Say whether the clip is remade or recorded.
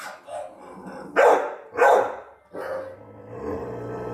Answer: recorded